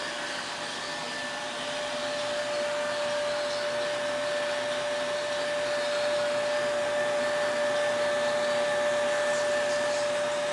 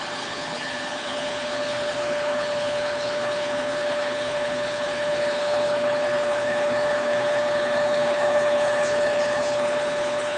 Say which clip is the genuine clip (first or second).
first